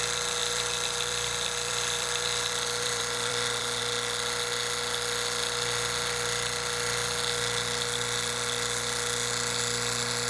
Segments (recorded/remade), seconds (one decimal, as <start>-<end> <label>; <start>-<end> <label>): 0.0-0.4 recorded; 0.4-3.8 remade; 3.8-10.3 recorded